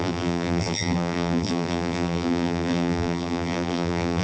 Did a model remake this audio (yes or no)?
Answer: yes